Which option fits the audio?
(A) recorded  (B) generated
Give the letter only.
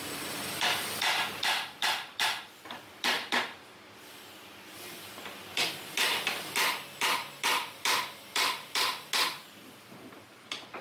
A